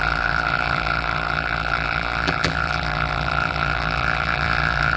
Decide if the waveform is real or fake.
fake